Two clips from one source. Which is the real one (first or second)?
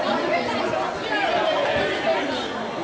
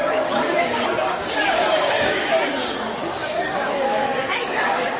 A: first